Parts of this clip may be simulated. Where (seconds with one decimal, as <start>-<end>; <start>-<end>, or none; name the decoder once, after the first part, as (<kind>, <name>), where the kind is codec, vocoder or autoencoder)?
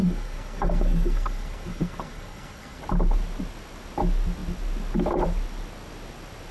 0.0-2.8 (codec, SNAC)